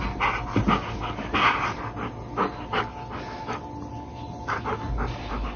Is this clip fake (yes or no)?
no